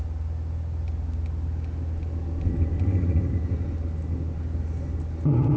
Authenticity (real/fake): real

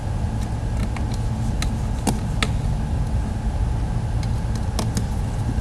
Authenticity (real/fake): real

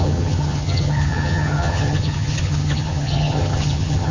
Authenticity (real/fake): fake